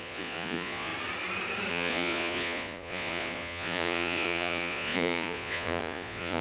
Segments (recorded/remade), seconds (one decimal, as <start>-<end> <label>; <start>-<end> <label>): 0.0-0.9 remade; 0.9-1.7 recorded; 1.7-6.4 remade